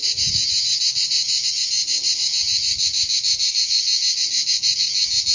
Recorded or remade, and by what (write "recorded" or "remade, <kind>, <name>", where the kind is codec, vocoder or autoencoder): recorded